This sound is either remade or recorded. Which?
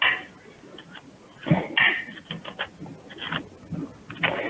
recorded